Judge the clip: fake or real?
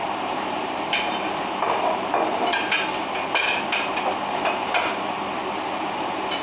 real